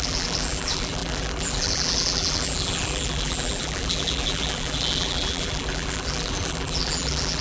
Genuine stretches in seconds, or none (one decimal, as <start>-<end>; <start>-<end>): none